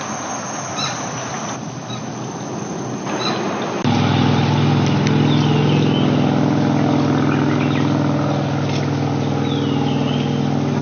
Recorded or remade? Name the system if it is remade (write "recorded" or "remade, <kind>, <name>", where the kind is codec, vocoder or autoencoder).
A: recorded